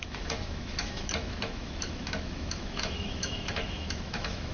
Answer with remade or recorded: remade